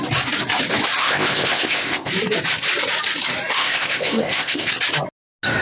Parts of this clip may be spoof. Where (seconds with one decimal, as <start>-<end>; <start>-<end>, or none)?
1.0-2.1; 3.6-4.7